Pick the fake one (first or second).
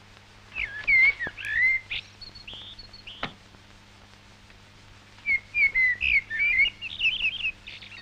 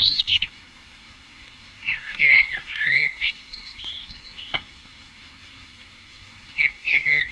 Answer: second